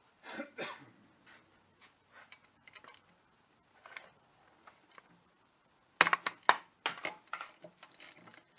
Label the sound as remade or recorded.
recorded